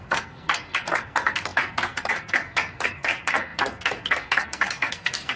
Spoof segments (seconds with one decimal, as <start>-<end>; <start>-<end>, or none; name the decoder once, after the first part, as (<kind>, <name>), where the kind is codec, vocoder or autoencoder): 0.0-5.4 (codec, SNAC)